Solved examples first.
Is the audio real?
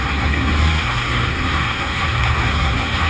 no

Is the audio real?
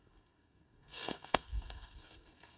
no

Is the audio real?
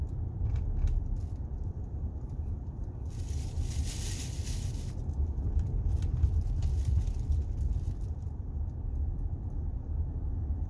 no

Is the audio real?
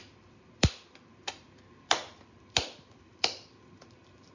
no